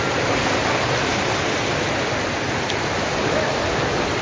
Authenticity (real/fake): real